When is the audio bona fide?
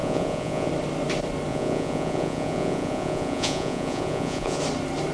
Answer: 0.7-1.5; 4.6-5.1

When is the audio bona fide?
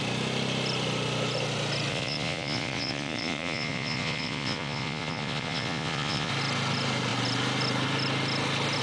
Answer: 0.0-1.9; 6.3-8.8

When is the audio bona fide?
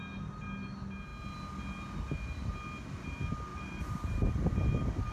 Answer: 0.0-3.5